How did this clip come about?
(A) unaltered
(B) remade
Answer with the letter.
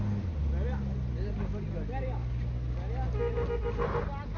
A